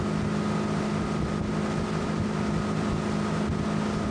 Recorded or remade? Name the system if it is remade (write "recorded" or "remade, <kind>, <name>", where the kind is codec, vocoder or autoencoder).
recorded